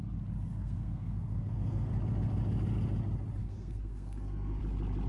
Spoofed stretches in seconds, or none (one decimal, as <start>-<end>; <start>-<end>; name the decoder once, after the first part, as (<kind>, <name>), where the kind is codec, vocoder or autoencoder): 0.5-1.9 (codec, SNAC); 3.4-4.6